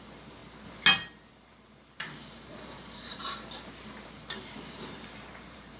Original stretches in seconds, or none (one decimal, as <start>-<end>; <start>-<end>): 0.4-1.3; 3.2-3.8